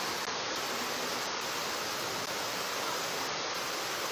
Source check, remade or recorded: recorded